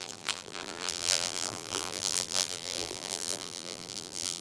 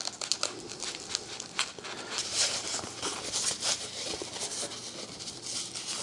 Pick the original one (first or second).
second